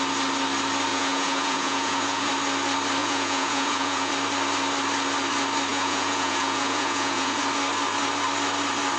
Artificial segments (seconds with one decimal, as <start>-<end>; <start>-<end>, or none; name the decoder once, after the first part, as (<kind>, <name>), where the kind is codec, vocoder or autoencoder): 0.9-2.3 (vocoder, Vocos); 3.0-4.1; 5.7-7.4